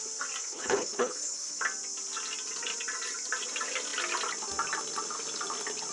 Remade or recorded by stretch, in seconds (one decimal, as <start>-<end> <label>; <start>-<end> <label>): 0.0-0.4 recorded; 0.4-1.6 remade; 1.6-5.9 recorded